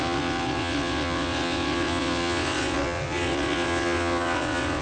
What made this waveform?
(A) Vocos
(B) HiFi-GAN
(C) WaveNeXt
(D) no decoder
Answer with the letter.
C